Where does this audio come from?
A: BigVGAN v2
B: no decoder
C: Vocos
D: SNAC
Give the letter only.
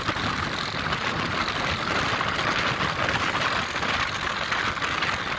B